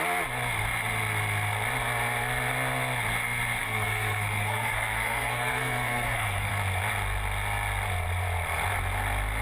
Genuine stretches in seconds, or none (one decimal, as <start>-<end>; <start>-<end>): 0.0-3.6; 6.5-9.4